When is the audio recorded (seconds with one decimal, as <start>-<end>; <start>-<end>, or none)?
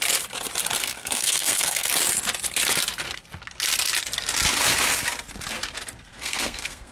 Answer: 0.0-0.8; 1.9-6.1